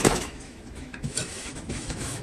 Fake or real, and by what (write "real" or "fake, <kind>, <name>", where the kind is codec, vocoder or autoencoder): fake, autoencoder, DAC-VAE